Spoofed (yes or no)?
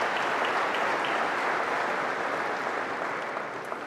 no